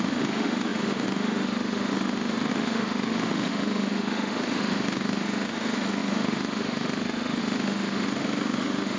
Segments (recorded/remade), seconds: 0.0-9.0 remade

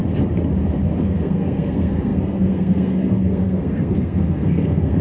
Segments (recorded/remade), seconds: 0.0-0.9 recorded; 0.9-5.0 remade

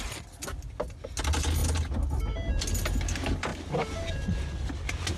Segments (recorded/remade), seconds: 0.0-5.2 recorded